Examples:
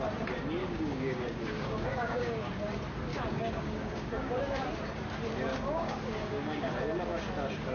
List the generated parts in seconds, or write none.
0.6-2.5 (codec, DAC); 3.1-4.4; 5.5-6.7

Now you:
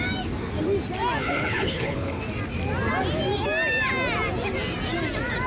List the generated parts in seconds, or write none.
1.2-2.2 (codec, HILCodec)

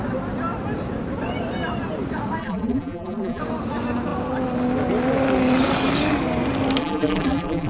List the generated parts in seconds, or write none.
2.4-3.4 (vocoder, BigVGAN v2); 6.8-7.7

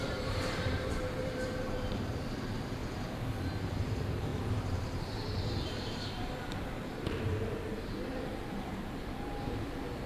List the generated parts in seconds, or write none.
0.0-2.8 (vocoder, BigVGAN v2); 3.6-10.1

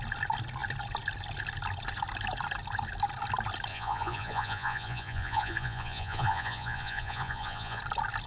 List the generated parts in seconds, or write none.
3.7-7.8 (vocoder, Vocos)